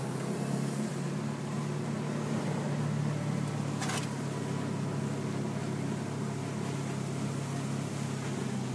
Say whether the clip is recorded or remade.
recorded